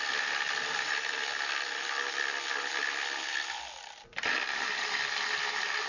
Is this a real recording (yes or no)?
no